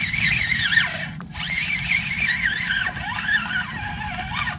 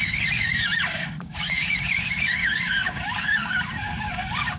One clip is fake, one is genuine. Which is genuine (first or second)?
first